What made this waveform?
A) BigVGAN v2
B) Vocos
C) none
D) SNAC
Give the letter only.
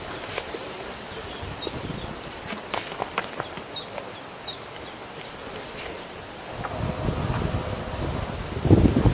C